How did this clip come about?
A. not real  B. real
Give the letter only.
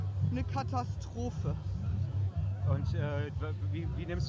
B